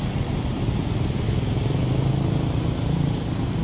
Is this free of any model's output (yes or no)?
yes